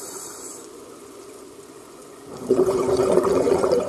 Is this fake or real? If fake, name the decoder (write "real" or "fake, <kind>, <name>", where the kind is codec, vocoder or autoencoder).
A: fake, vocoder, Vocos